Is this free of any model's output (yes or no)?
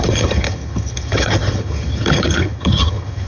no